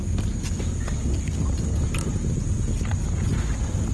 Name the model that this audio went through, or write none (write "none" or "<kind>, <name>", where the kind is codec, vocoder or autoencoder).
none